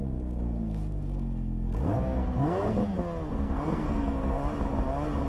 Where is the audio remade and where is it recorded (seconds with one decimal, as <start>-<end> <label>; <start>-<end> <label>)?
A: 0.0-2.8 remade; 2.8-3.3 recorded; 3.3-4.4 remade; 4.4-5.3 recorded